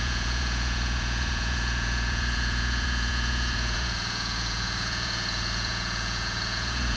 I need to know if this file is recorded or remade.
remade